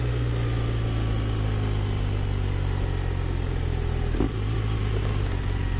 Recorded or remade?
recorded